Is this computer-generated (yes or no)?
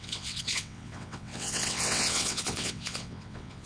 yes